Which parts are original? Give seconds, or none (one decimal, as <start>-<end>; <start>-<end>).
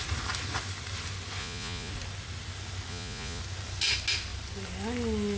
0.0-1.4; 1.9-2.9; 3.4-5.4